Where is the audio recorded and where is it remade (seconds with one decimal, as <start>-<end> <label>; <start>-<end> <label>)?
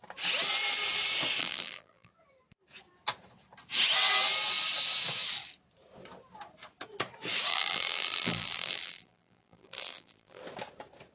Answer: 0.0-1.4 recorded; 1.4-2.1 remade; 2.1-7.5 recorded; 7.5-10.4 remade; 10.4-11.1 recorded